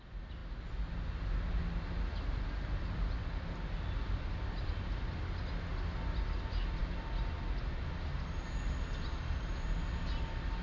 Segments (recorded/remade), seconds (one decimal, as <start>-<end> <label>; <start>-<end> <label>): 0.0-10.6 recorded